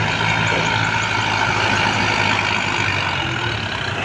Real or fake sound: real